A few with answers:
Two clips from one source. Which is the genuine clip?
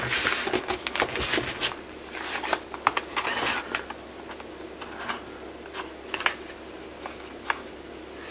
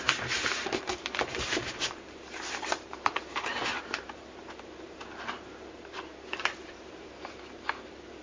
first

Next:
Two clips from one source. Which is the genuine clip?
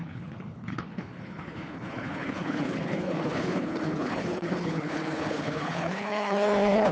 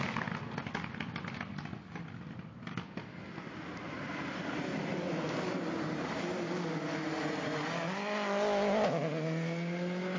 second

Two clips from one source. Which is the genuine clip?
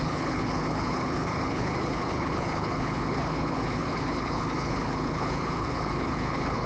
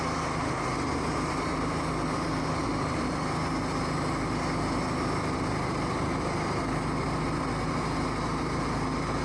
second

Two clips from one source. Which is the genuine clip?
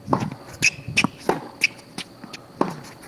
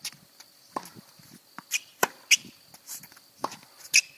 first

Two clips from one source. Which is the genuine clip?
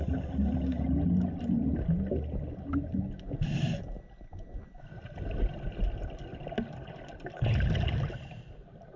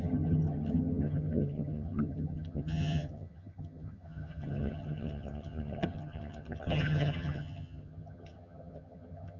first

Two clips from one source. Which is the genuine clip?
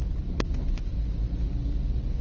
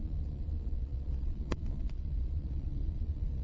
first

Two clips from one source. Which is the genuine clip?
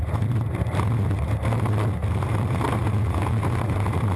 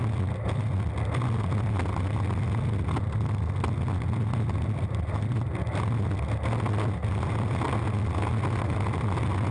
second